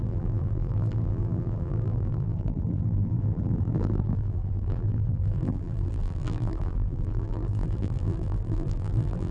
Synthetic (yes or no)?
yes